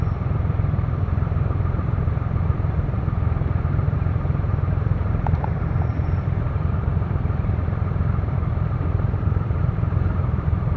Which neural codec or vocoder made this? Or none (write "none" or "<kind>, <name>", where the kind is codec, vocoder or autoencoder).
vocoder, BigVGAN v2